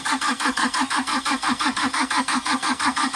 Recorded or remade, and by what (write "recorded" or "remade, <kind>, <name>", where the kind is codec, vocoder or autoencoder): remade, codec, SNAC